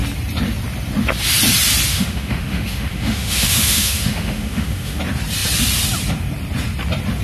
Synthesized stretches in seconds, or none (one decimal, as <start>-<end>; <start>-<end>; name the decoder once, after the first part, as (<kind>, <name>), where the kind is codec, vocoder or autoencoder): 1.9-5.0 (autoencoder, DAC-VAE)